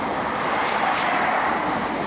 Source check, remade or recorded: recorded